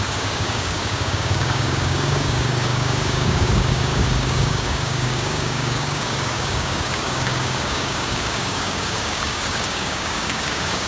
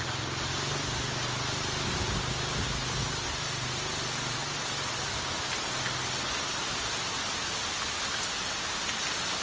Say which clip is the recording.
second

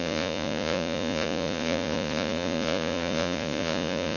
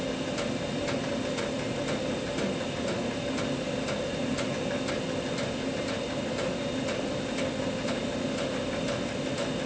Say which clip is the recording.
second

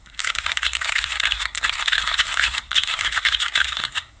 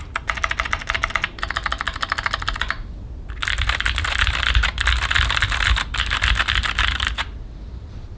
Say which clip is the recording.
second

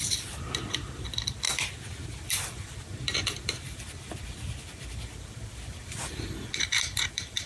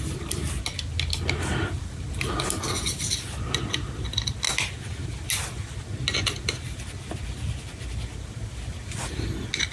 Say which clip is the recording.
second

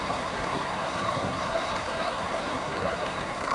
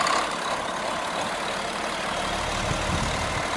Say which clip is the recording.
second